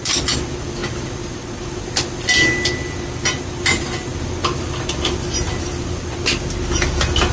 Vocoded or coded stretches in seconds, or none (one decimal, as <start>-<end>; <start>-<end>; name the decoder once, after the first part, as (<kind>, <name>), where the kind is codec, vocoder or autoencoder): none